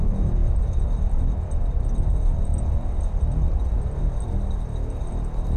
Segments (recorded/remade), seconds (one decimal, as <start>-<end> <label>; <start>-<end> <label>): 0.0-0.4 recorded; 0.4-1.8 remade; 1.8-2.5 recorded; 2.5-4.0 remade; 4.0-5.6 recorded